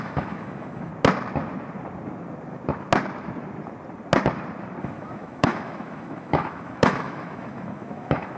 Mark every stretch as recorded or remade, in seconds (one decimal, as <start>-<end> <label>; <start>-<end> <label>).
0.0-0.9 remade; 0.9-4.8 recorded; 4.8-8.4 remade